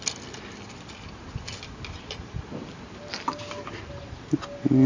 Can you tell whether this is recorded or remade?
recorded